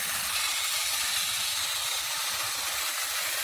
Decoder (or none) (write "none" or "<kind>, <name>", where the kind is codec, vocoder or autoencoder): none